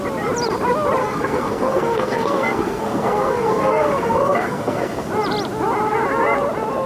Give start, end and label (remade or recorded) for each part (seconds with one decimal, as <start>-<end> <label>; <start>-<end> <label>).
0.0-1.0 recorded; 1.0-5.1 remade; 5.1-6.9 recorded